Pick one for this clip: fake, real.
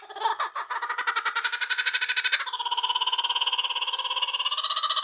real